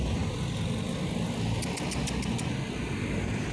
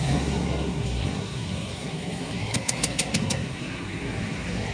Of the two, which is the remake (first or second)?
second